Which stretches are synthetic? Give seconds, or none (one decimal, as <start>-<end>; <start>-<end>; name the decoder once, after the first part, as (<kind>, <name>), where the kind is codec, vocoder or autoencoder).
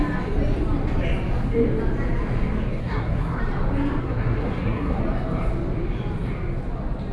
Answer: 2.8-3.4 (codec, SNAC); 4.0-5.0